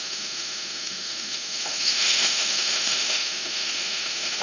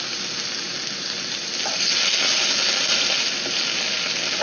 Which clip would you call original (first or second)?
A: second